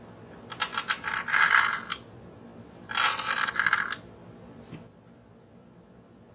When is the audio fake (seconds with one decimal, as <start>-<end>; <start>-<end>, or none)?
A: none